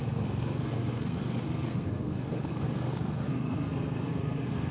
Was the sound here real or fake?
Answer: fake